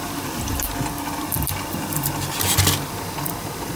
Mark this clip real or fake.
real